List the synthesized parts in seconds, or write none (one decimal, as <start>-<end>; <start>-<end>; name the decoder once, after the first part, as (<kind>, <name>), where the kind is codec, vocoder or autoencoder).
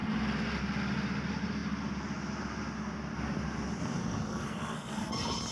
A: 4.0-5.1 (codec, SNAC)